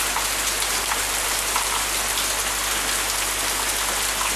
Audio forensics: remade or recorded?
recorded